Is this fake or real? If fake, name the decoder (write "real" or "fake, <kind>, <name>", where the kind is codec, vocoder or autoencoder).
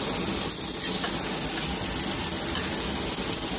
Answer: real